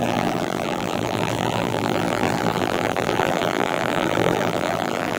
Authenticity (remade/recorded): remade